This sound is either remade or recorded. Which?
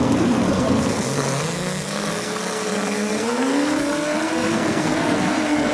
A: remade